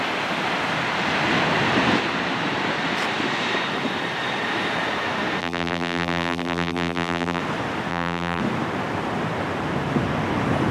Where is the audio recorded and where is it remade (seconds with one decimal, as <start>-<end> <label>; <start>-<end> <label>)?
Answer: 0.0-5.4 recorded; 5.4-7.4 remade; 7.4-7.9 recorded; 7.9-8.4 remade; 8.4-10.7 recorded